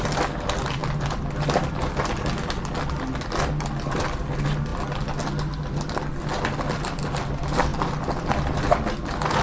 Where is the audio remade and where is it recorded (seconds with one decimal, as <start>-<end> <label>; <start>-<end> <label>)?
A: 0.0-9.4 recorded